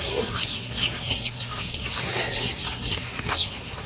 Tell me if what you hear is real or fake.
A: fake